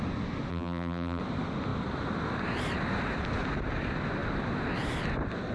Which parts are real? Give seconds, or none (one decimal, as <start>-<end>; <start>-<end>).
0.0-0.5; 1.2-5.5